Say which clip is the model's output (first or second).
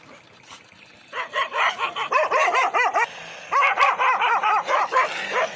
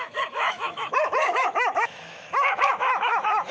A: second